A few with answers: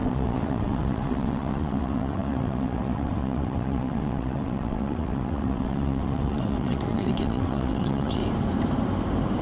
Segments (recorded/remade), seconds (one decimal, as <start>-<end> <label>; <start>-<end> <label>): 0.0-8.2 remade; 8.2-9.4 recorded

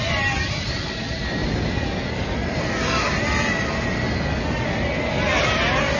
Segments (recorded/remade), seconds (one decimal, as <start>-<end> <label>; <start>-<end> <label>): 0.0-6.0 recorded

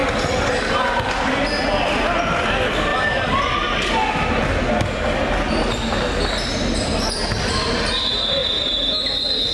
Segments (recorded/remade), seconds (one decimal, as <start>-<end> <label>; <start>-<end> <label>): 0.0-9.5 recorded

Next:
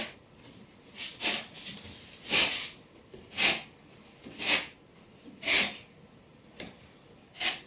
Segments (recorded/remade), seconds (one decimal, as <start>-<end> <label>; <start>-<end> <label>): 0.0-7.7 recorded

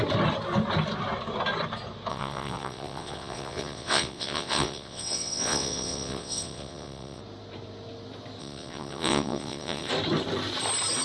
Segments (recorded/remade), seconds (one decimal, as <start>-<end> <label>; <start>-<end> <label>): 0.0-2.1 recorded; 2.1-7.2 remade; 7.2-8.4 recorded; 8.4-9.9 remade; 9.9-11.0 recorded